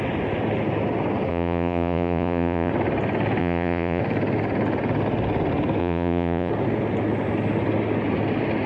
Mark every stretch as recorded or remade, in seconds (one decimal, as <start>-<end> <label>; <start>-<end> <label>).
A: 0.0-1.3 recorded; 1.3-2.7 remade; 2.7-3.4 recorded; 3.4-4.0 remade; 4.0-5.8 recorded; 5.8-6.5 remade; 6.5-8.7 recorded